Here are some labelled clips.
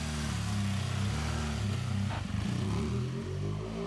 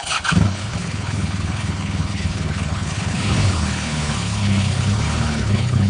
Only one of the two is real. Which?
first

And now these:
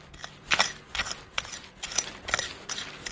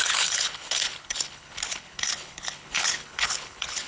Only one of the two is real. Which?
first